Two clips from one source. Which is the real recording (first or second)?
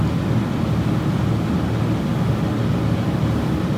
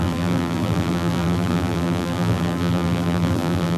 first